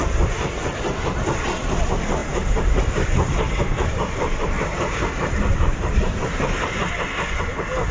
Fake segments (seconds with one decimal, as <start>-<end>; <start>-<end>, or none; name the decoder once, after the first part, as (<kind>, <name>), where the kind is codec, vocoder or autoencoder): 2.2-6.9 (vocoder, BigVGAN v2)